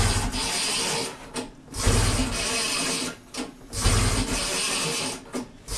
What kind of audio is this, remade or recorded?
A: recorded